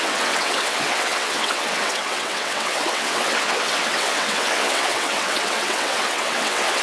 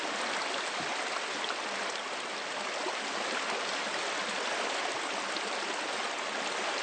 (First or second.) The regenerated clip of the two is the first